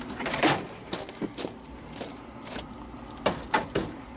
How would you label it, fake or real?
real